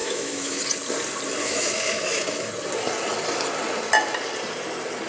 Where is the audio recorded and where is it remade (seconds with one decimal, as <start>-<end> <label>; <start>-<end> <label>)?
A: 0.0-0.6 remade; 0.6-1.4 recorded; 1.4-2.5 remade; 2.5-5.1 recorded